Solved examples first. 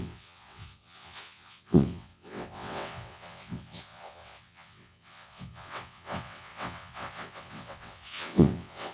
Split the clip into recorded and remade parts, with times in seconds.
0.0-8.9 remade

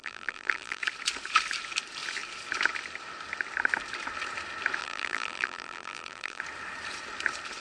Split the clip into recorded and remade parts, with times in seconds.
0.0-0.8 remade; 0.8-4.8 recorded; 4.8-6.4 remade; 6.4-7.6 recorded